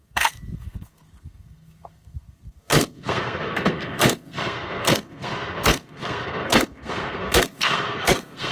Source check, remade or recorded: remade